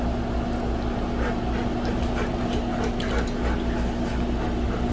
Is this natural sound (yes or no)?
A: yes